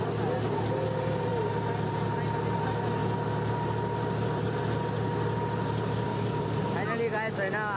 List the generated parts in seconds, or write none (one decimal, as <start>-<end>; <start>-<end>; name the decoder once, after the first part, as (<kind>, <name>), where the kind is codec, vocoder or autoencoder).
none